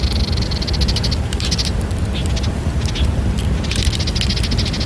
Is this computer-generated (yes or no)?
no